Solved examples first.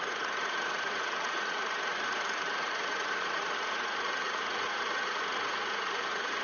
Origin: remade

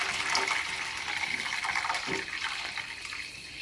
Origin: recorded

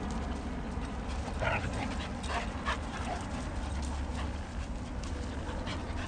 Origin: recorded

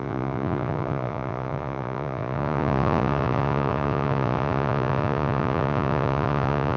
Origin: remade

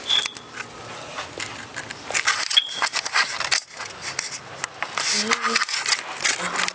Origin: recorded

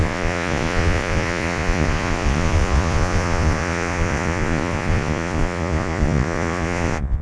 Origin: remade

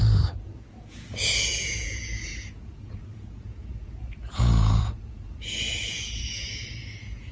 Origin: remade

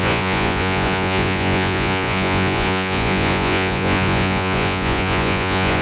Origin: remade